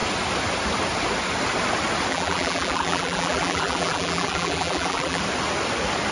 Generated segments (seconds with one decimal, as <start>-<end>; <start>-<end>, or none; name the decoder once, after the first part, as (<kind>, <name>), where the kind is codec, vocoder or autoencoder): 2.1-5.2 (vocoder, BigVGAN v2)